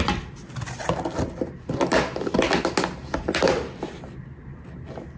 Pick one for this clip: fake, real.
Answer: real